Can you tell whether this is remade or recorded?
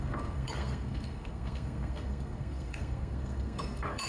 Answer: remade